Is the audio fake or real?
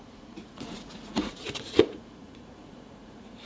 fake